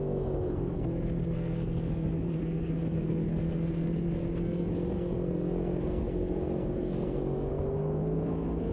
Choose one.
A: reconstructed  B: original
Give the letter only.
A